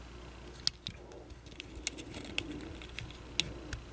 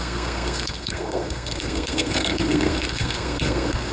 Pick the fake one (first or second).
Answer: second